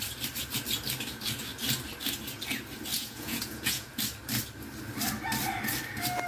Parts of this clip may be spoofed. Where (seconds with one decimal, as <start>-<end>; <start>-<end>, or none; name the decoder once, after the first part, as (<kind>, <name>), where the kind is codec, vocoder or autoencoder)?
2.9-4.0 (vocoder, Vocos)